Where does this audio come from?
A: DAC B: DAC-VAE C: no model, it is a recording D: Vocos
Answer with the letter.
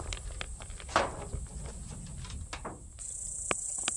C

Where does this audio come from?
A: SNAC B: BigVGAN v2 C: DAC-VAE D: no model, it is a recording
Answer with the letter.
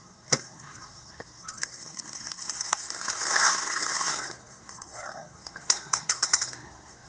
A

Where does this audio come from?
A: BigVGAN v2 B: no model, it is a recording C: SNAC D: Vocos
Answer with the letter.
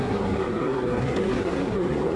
C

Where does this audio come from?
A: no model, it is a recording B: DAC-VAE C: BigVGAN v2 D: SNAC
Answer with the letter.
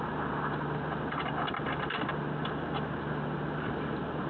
A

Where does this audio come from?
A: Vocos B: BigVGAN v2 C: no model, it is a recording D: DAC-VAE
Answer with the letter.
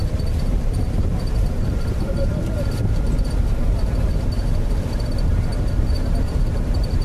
B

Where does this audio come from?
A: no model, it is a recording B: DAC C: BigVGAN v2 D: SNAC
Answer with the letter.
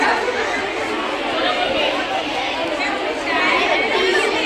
A